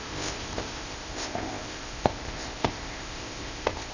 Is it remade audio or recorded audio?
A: remade